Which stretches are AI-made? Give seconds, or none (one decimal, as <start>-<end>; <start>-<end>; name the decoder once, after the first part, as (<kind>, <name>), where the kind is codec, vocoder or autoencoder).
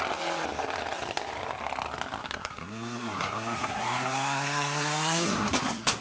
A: 2.2-6.0 (codec, SNAC)